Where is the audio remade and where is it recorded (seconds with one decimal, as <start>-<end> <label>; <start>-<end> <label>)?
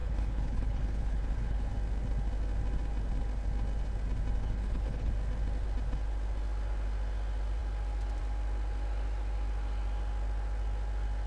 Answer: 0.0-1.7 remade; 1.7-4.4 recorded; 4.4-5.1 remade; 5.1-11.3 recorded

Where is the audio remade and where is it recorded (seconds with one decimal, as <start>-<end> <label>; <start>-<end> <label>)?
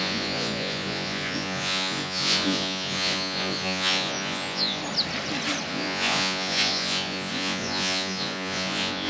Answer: 0.0-4.8 remade; 4.8-5.7 recorded; 5.7-9.1 remade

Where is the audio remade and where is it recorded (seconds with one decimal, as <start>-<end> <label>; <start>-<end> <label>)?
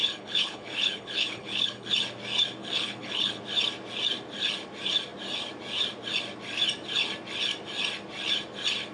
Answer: 0.0-1.9 remade; 1.9-2.6 recorded; 2.6-3.4 remade; 3.4-8.9 recorded